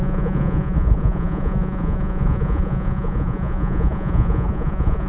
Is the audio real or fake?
fake